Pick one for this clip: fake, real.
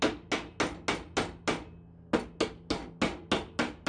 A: real